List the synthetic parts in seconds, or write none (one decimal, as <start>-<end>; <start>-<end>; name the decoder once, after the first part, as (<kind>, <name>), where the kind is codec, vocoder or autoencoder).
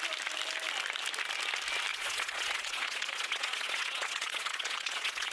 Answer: 1.9-5.3 (vocoder, Vocos)